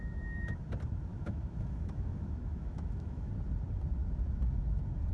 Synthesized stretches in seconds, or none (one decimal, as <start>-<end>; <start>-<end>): 0.0-0.6; 1.1-3.3